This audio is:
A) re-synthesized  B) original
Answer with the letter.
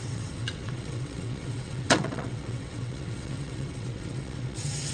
A